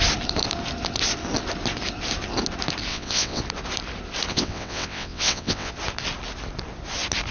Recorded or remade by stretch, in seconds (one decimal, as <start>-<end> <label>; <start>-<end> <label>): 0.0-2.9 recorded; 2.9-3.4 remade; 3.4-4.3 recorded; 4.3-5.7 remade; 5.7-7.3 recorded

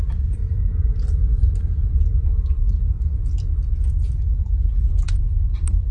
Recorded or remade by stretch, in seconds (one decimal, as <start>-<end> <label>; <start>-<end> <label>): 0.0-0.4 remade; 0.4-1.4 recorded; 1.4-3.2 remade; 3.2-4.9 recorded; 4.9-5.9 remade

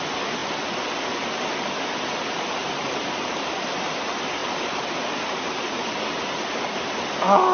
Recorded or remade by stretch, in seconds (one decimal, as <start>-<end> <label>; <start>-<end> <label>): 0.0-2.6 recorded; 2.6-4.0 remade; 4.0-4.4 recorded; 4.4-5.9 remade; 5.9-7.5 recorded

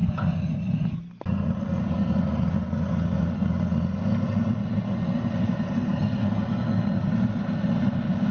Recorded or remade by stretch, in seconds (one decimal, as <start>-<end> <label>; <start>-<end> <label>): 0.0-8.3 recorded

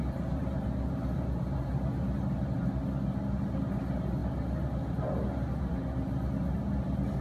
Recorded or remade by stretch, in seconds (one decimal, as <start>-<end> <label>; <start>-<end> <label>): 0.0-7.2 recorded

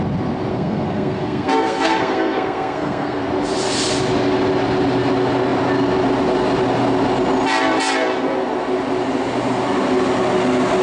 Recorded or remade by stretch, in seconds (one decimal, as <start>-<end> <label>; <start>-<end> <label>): 0.0-0.5 recorded; 0.5-3.2 remade; 3.2-10.8 recorded